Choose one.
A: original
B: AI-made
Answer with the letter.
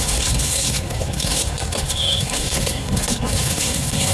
B